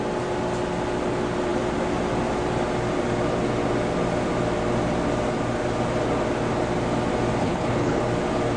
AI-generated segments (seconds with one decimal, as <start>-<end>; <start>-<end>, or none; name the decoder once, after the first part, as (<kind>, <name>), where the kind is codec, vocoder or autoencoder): 7.4-8.0 (codec, HILCodec)